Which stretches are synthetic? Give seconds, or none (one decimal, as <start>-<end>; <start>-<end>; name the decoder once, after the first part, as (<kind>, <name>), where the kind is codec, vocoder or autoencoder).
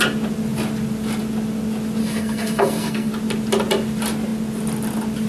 2.0-3.1 (codec, SNAC)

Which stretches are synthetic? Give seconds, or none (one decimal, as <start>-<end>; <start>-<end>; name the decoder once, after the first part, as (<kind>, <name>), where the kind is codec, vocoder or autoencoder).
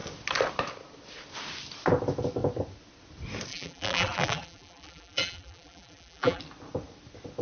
3.5-6.4 (vocoder, BigVGAN v2)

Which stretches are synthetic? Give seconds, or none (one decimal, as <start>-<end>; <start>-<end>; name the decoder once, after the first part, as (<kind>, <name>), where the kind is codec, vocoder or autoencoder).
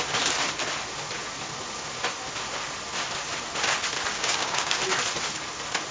4.1-4.8 (codec, DAC)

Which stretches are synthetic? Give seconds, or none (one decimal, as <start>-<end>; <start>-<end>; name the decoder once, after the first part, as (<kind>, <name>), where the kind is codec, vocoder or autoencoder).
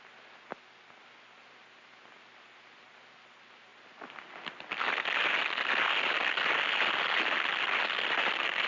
none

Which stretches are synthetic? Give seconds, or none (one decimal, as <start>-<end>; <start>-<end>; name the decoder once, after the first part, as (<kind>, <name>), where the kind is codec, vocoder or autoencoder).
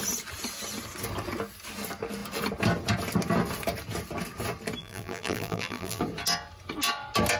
4.8-6.0 (vocoder, BigVGAN v2)